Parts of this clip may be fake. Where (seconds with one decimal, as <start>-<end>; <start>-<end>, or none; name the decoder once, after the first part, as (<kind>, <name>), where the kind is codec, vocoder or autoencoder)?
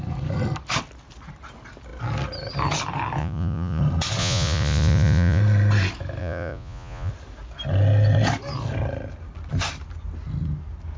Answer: 3.2-3.8 (vocoder, Vocos); 4.2-5.4; 6.2-7.1